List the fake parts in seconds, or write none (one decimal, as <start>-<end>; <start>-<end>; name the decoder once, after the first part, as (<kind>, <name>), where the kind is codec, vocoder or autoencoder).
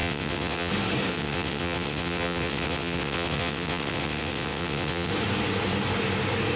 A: 0.0-0.7 (vocoder, WaveNeXt); 1.1-5.1